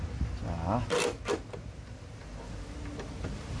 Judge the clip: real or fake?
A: real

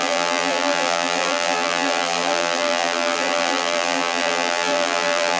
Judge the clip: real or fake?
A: fake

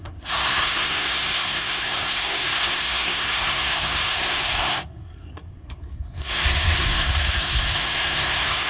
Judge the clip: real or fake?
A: fake